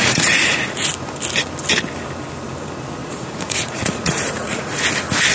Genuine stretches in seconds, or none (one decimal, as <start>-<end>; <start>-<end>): 0.9-3.0; 4.8-5.3